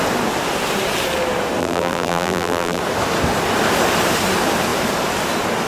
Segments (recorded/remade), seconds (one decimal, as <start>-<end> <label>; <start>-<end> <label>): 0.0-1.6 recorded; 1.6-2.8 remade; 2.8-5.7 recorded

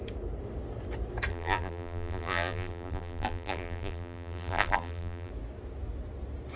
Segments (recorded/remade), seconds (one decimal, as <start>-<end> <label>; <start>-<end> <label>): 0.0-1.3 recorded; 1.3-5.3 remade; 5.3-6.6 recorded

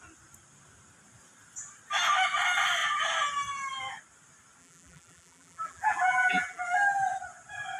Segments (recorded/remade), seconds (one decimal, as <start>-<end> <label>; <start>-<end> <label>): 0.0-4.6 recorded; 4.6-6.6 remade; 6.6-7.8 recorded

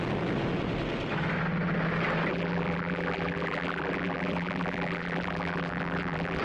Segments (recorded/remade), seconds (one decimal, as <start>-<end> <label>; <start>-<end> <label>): 0.0-2.3 recorded; 2.3-6.4 remade